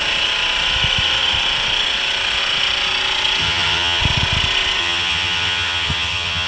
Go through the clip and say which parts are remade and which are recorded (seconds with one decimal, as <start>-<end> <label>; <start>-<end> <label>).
0.0-3.4 recorded; 3.4-4.0 remade; 4.0-4.8 recorded; 4.8-6.5 remade